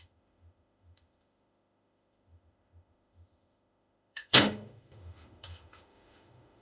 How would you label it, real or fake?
fake